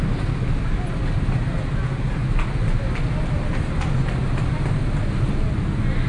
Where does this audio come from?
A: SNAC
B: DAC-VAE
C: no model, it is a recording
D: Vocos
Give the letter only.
C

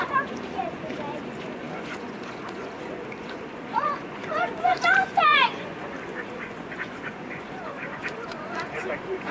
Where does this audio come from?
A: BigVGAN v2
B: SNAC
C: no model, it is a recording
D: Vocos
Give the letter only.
D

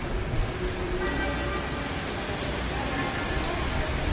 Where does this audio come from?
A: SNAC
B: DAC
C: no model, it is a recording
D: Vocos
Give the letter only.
C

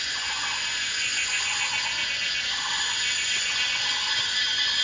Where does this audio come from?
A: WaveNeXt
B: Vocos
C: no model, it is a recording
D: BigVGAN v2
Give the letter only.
B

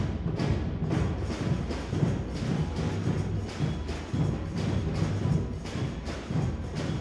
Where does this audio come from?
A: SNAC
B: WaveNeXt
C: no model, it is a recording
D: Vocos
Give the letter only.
C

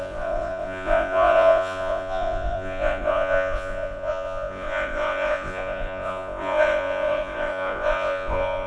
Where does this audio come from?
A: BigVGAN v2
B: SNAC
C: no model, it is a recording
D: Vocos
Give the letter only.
D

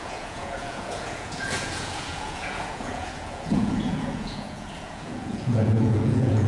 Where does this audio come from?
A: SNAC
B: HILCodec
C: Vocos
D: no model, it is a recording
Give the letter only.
C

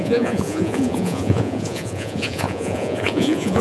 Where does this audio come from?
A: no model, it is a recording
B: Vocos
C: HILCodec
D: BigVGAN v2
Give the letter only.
B